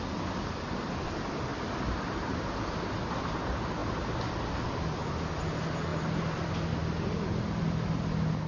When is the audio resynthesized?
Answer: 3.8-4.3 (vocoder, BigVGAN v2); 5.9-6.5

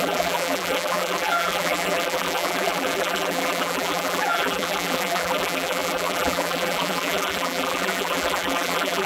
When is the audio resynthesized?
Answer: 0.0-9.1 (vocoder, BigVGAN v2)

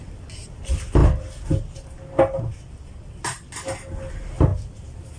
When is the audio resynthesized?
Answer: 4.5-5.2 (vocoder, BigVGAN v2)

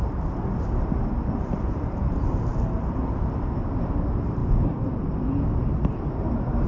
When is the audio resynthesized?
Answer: 0.0-6.7 (vocoder, BigVGAN v2)

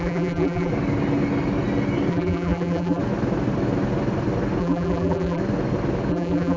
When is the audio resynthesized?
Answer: 0.0-0.7 (vocoder, BigVGAN v2); 2.1-3.0; 4.6-5.4; 6.1-6.6

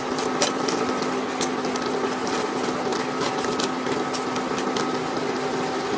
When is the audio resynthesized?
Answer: 0.0-0.9 (vocoder, BigVGAN v2)

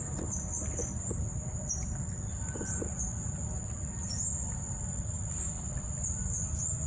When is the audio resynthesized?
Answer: 4.3-5.0 (vocoder, BigVGAN v2)

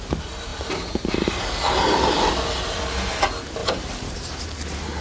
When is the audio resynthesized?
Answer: 3.6-4.4 (vocoder, BigVGAN v2)